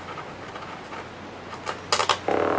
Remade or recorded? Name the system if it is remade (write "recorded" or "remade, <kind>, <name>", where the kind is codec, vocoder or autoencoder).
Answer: recorded